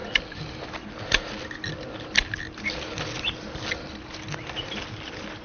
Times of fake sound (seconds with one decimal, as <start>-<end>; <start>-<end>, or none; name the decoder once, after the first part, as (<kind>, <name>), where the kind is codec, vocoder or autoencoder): none